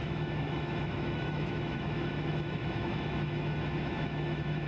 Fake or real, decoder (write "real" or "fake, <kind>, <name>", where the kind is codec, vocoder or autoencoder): fake, autoencoder, DAC-VAE